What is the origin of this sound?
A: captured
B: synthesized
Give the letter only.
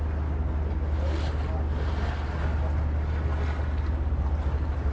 A